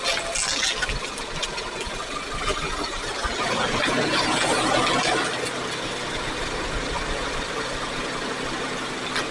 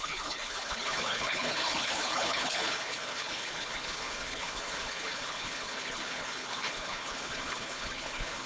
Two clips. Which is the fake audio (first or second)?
second